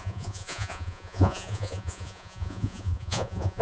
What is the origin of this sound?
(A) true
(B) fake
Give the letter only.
B